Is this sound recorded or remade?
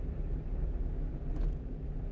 recorded